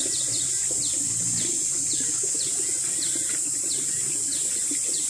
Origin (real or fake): real